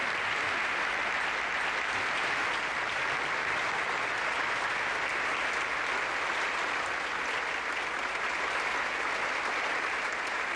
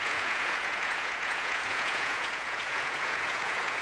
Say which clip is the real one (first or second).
first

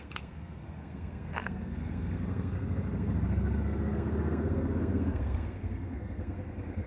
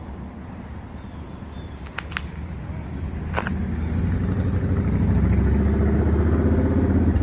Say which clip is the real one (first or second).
second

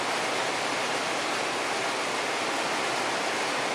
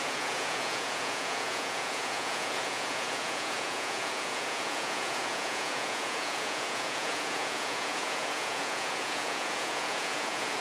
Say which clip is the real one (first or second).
first